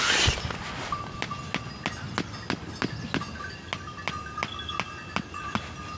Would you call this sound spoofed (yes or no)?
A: no